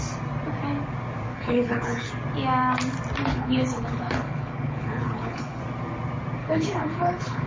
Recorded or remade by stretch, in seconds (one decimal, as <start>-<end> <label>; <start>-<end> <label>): 0.0-1.3 recorded; 1.3-2.1 remade; 2.1-3.3 recorded; 3.3-5.6 remade; 5.6-6.4 recorded; 6.4-7.5 remade